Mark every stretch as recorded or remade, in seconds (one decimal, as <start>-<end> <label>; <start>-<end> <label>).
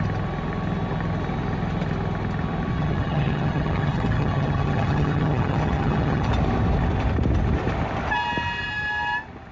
0.0-2.7 recorded; 2.7-6.3 remade; 6.3-9.5 recorded